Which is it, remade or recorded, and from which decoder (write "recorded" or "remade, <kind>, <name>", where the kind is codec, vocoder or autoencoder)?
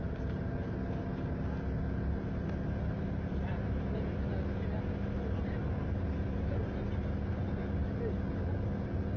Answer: recorded